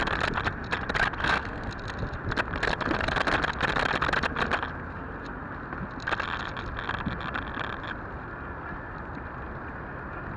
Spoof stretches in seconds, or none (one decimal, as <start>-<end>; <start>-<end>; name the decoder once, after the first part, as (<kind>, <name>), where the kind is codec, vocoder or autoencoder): 1.2-1.7 (codec, SNAC)